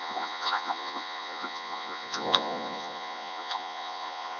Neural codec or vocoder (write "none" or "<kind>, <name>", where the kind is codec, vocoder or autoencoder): vocoder, Vocos